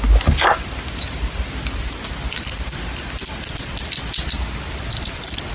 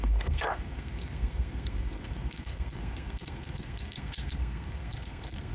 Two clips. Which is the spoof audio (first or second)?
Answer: second